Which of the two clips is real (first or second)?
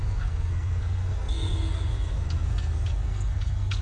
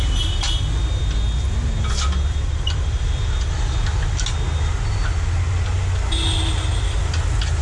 second